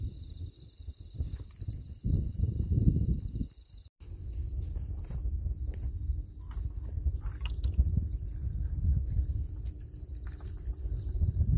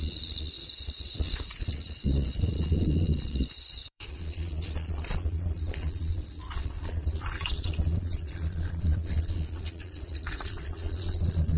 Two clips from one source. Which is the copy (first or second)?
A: second